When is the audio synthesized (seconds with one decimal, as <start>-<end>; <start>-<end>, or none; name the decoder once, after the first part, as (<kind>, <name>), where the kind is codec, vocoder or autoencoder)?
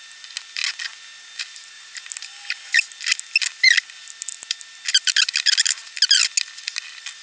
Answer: none